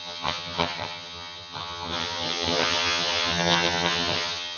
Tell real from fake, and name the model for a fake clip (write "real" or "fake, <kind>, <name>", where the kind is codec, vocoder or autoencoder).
fake, vocoder, HiFi-GAN